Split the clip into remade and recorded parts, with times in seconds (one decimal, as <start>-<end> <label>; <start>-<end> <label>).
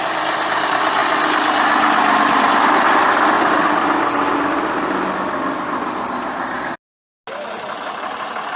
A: 0.0-8.6 recorded